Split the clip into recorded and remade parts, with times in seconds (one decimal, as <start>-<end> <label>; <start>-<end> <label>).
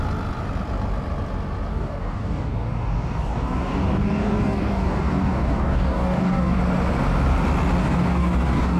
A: 0.0-1.7 recorded; 1.7-6.6 remade; 6.6-7.8 recorded; 7.8-8.8 remade